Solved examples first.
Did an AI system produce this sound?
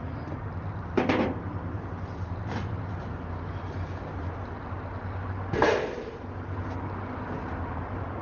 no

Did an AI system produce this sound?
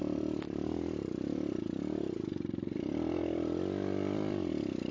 yes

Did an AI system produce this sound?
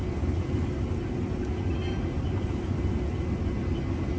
no